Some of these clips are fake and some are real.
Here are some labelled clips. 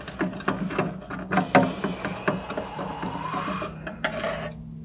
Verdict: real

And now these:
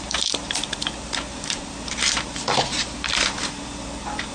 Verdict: fake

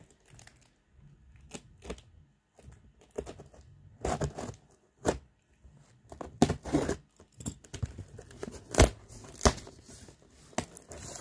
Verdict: real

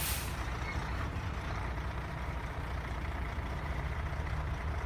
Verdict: real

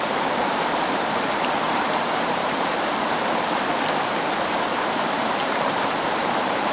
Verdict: fake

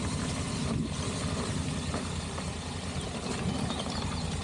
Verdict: real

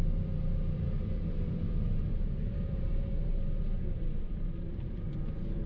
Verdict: fake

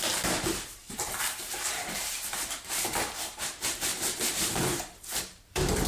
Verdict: fake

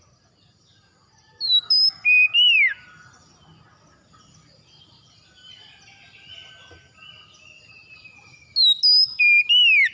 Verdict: real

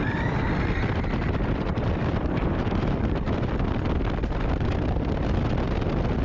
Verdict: fake